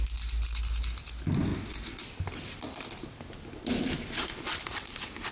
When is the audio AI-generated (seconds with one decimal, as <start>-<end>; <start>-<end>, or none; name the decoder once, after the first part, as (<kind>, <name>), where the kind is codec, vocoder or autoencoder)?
none